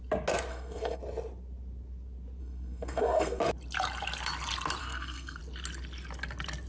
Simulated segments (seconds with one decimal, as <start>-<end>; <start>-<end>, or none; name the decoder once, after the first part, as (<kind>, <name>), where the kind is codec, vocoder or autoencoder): 0.5-1.0 (codec, SNAC); 2.4-3.4; 4.8-5.4